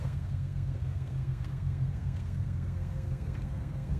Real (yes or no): no